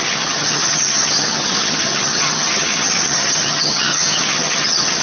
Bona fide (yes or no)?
no